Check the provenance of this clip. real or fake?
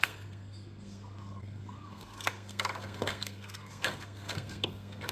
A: fake